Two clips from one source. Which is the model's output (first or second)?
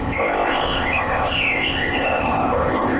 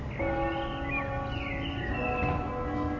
first